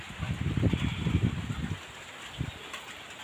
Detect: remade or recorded recorded